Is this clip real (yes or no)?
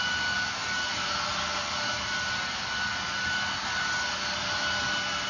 yes